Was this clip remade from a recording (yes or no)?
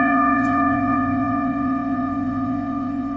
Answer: yes